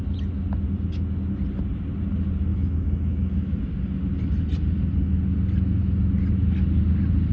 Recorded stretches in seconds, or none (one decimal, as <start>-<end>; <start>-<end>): 0.0-2.5; 3.6-7.3